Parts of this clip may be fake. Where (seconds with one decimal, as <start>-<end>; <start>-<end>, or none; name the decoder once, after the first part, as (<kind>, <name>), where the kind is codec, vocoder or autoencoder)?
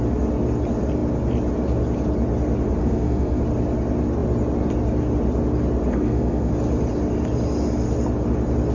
2.8-3.4 (codec, SNAC); 5.9-6.5